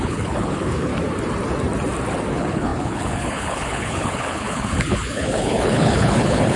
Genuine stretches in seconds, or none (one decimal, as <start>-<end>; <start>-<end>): 0.9-2.3